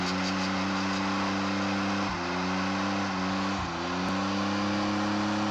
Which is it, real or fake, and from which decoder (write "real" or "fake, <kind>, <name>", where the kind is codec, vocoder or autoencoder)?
real